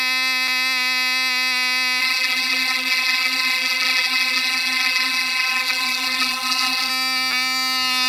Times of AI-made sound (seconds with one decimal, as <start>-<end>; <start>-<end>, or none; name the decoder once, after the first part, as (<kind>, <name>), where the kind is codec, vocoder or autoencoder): 2.0-6.9 (vocoder, BigVGAN v2)